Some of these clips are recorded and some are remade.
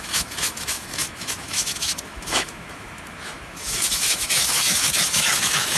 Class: remade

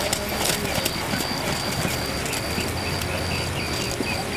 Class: recorded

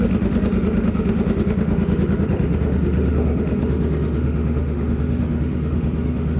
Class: remade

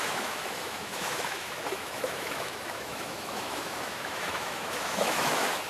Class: remade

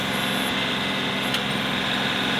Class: recorded